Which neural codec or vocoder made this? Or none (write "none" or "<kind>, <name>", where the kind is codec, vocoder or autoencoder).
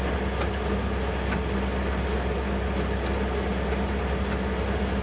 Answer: none